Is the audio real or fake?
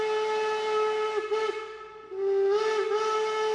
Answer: real